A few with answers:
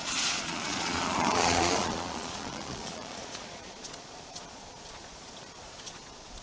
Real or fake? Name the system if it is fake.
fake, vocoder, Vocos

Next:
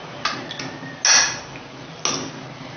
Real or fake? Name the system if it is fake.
real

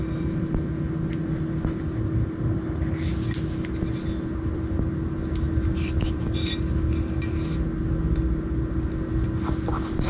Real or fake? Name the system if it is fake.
real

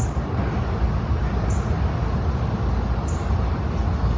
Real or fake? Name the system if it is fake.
real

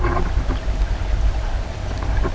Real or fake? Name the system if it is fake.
real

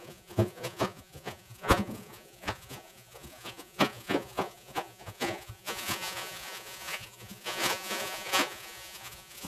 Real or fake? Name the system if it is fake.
fake, vocoder, Vocos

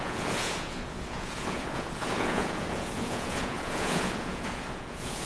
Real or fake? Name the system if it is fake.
fake, vocoder, Vocos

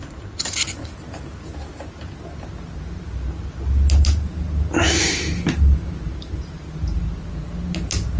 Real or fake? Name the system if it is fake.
real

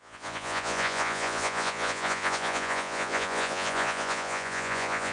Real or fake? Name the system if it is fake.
fake, vocoder, Vocos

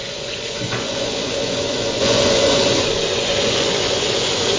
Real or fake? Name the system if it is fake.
fake, vocoder, Vocos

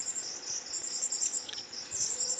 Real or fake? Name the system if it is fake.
fake, vocoder, Vocos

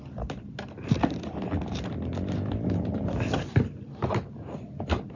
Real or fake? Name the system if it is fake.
real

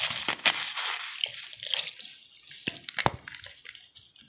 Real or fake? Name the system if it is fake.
real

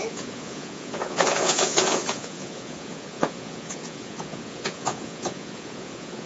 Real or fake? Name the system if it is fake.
fake, vocoder, Vocos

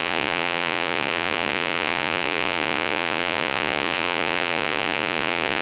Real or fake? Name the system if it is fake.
fake, vocoder, Vocos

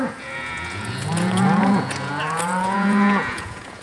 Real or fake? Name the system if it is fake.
fake, vocoder, Vocos